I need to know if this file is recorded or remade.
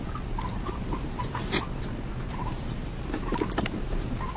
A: recorded